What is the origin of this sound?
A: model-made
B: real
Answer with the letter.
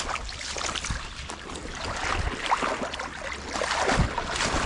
B